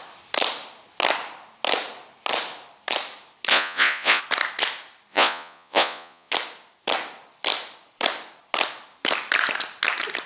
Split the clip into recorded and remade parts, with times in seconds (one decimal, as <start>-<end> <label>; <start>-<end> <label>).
0.0-3.5 recorded; 3.5-4.2 remade; 4.2-5.1 recorded; 5.1-6.3 remade; 6.3-10.3 recorded